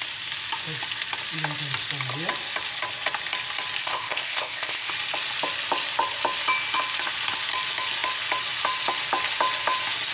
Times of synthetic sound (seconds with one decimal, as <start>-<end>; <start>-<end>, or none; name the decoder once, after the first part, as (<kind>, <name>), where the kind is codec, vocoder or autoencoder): 3.8-4.9 (codec, ZipCodec)